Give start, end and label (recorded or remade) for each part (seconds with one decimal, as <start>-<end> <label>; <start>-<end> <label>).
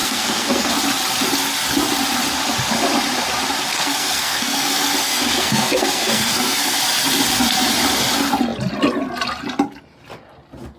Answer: 0.0-0.7 remade; 0.7-3.7 recorded; 3.7-6.8 remade; 6.8-10.8 recorded